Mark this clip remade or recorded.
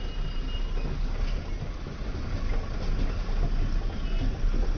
recorded